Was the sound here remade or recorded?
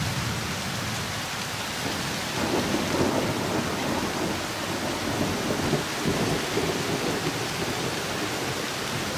recorded